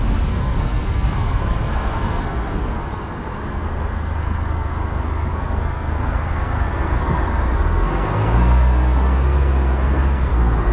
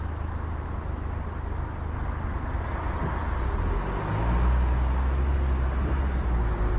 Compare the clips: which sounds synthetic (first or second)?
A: first